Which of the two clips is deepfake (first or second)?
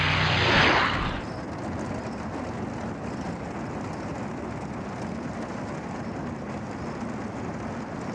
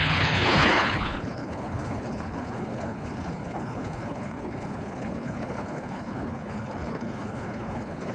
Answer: second